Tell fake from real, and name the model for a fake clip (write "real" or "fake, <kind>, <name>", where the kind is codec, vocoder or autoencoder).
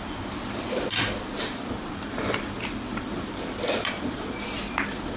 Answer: fake, vocoder, BigVGAN v2